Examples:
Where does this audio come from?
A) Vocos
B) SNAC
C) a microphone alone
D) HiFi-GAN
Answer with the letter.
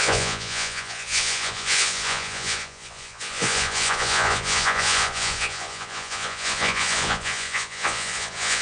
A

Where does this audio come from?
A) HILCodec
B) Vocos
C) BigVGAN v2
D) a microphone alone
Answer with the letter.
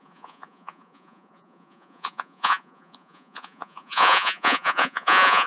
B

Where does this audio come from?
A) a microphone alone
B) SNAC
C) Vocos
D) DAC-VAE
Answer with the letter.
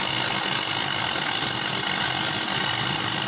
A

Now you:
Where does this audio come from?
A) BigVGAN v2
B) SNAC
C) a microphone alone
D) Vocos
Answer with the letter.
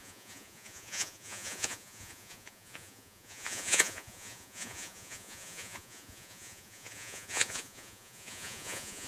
D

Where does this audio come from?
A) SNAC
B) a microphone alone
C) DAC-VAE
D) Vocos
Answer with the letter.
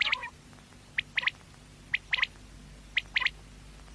B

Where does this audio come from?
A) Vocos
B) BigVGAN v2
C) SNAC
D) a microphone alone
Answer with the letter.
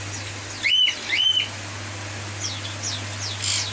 D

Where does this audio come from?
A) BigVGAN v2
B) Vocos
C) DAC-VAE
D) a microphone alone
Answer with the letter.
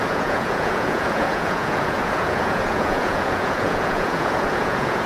B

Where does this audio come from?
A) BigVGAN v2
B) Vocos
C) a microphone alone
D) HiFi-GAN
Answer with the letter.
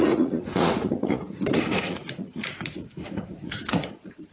B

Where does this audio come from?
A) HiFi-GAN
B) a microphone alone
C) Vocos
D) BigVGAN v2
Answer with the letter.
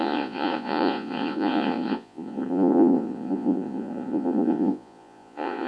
C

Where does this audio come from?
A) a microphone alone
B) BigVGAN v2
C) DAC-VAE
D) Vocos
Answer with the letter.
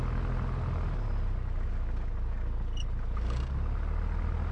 A